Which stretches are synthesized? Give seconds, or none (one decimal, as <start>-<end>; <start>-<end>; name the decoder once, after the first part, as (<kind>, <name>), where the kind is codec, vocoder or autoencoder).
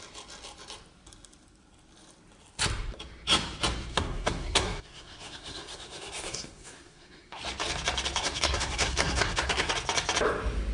3.9-7.4 (codec, SNAC); 8.2-9.7